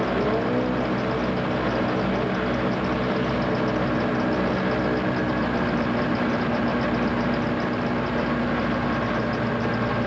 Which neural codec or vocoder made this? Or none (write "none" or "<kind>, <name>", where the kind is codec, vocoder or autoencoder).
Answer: none